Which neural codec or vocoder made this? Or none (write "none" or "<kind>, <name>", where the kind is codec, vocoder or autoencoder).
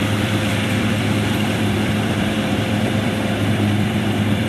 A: vocoder, BigVGAN v2